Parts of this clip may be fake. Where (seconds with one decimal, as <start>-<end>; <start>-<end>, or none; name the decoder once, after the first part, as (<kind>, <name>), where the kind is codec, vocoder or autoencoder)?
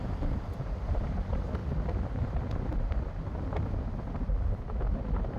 0.0-1.6 (vocoder, BigVGAN v2); 4.8-5.4